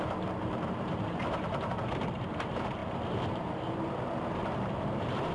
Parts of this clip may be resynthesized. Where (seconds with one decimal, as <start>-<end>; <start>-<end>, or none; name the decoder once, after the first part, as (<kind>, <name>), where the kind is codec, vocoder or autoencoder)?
0.0-5.3 (vocoder, BigVGAN v2)